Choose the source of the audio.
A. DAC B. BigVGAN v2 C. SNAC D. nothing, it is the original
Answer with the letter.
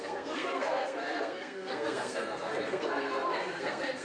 C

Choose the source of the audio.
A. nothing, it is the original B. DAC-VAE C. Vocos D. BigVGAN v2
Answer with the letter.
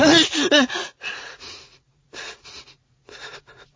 C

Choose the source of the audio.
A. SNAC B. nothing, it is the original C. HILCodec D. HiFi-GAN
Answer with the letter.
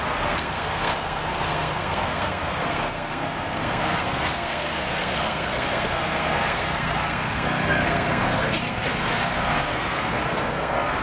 A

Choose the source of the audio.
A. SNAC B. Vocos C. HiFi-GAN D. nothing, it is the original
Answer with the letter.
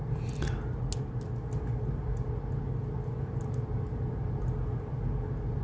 D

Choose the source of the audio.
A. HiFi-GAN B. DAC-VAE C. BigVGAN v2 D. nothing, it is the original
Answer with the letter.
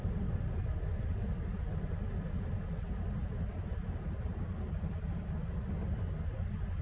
D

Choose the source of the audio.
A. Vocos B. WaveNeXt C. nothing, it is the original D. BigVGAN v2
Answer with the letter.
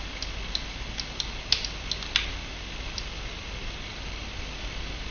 C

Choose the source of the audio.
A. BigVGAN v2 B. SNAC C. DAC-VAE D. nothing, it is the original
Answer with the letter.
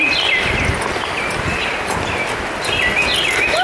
D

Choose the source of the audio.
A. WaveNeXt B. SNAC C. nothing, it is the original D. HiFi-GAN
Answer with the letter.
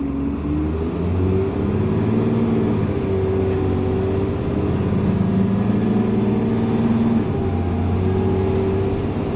C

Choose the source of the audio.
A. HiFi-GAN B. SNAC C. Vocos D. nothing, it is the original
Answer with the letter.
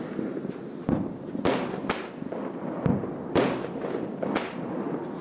D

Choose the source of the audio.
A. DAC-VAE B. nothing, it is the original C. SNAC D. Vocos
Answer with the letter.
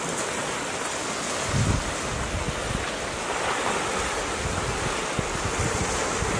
B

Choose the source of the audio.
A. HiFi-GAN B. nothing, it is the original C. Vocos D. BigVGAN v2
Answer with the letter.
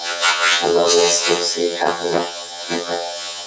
A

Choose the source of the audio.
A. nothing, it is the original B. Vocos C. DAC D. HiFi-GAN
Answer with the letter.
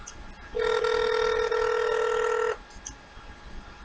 A